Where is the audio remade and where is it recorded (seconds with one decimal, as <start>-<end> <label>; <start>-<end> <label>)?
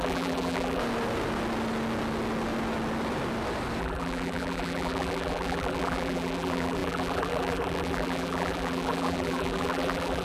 0.0-0.8 remade; 0.8-3.8 recorded; 3.8-10.2 remade